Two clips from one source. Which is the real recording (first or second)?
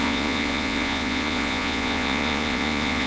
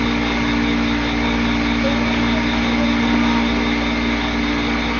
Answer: second